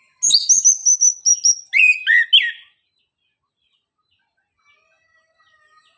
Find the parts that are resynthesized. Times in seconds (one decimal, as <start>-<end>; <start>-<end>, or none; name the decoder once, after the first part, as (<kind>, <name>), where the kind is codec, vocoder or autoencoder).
none